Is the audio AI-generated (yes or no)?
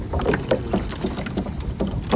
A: no